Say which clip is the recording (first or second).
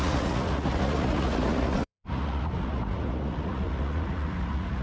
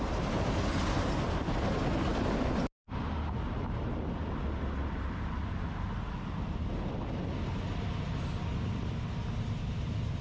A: second